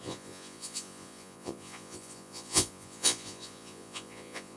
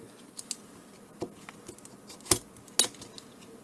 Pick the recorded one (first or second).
second